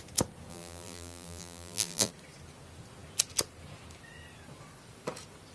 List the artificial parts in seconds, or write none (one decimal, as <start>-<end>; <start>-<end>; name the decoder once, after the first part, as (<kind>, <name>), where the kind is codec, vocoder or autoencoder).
0.5-2.1 (vocoder, BigVGAN v2)